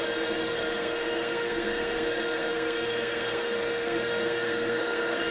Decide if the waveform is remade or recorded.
remade